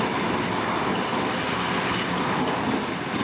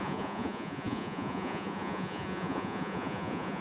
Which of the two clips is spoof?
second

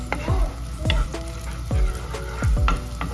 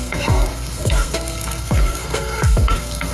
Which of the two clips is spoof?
second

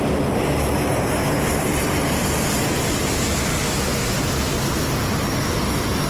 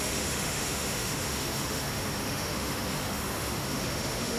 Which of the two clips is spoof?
second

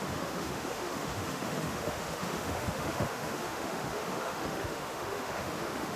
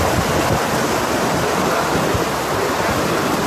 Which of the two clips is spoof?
first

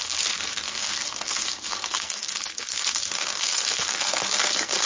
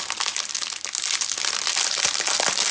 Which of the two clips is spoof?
first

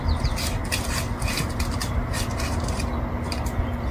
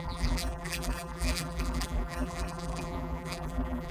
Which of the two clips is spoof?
second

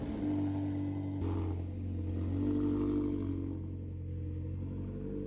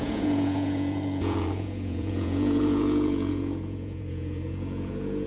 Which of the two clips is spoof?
second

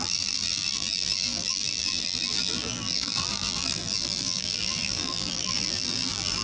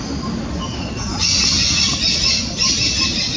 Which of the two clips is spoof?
first